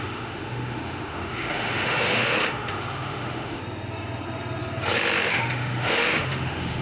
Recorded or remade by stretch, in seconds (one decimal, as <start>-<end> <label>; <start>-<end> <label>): 0.0-3.6 remade; 3.6-5.3 recorded; 5.3-6.8 remade